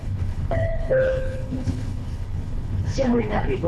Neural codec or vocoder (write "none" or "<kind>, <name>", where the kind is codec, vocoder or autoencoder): codec, HILCodec